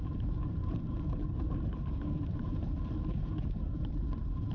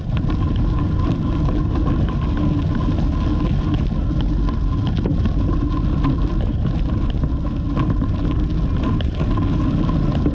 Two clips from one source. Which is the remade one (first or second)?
first